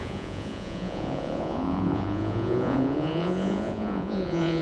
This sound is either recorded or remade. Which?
remade